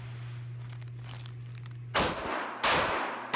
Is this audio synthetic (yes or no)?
no